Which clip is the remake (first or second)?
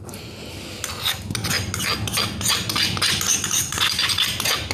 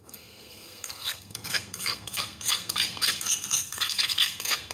second